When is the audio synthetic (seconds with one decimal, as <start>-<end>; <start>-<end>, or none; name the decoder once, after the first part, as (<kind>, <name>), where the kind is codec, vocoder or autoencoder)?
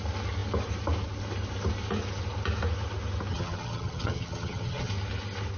3.3-4.9 (vocoder, HiFi-GAN)